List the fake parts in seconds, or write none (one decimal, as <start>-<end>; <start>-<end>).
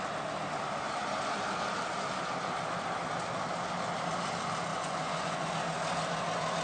4.7-5.5